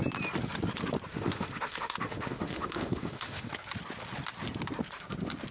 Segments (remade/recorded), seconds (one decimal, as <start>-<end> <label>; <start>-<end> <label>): 0.0-1.1 recorded; 1.1-3.5 remade; 3.5-5.5 recorded